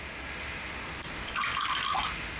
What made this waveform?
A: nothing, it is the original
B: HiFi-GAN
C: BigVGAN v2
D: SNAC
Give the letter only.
A